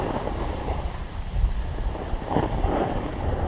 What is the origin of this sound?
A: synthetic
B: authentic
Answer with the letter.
B